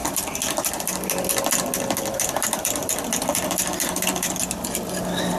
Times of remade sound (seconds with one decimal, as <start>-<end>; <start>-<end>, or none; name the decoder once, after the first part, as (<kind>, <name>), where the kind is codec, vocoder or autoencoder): 0.0-1.3 (vocoder, BigVGAN v2); 2.8-4.3